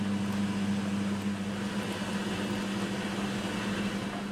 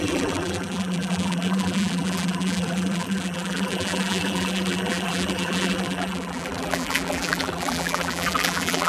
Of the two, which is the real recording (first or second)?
first